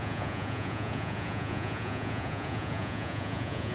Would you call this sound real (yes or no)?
no